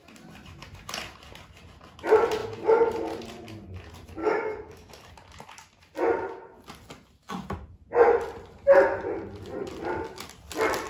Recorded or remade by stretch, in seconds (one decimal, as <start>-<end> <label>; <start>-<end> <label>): 0.0-4.2 recorded; 4.2-5.1 remade; 5.1-10.9 recorded